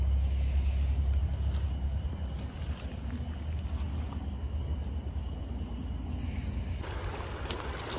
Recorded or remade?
recorded